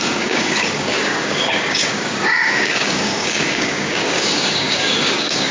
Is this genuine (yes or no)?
no